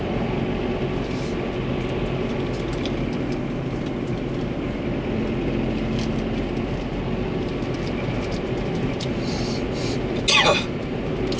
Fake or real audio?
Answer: real